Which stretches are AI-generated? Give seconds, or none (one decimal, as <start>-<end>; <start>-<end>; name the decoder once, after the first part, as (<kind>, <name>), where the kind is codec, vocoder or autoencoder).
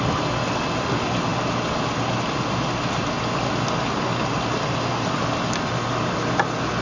none